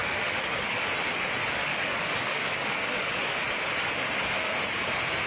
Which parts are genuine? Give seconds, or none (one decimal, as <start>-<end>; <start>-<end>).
0.9-1.6; 3.2-5.3